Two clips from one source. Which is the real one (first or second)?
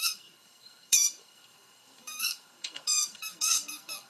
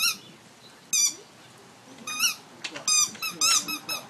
second